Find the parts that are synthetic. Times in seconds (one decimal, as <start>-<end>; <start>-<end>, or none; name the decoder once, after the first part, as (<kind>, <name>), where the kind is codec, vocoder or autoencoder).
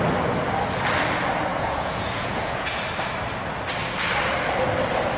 1.5-2.8 (vocoder, Vocos)